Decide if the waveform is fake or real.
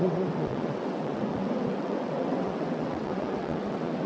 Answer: fake